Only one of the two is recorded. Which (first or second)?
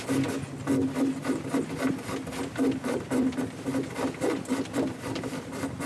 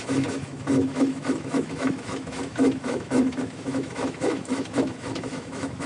first